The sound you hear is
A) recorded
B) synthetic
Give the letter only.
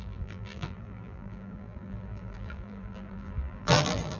B